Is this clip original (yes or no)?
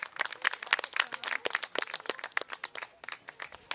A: yes